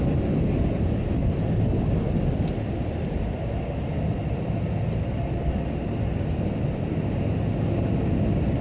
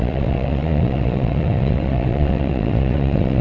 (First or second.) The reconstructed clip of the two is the second